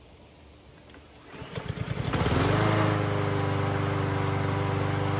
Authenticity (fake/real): real